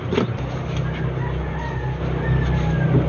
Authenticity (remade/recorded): recorded